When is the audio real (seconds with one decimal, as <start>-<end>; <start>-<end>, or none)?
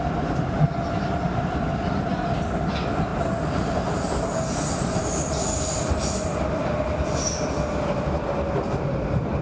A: 0.0-9.4